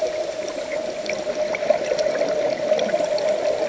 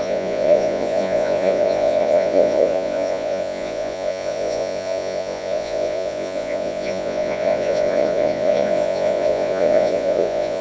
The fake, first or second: second